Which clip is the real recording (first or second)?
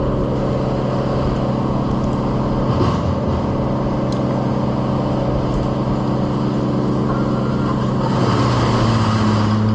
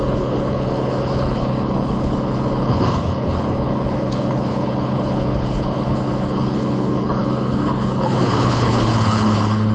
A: first